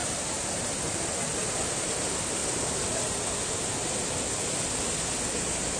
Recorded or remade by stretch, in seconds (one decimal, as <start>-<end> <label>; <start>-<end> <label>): 0.0-0.9 remade; 0.9-5.8 recorded